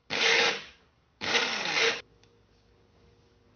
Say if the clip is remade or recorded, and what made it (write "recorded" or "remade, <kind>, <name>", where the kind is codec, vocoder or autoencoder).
remade, codec, DAC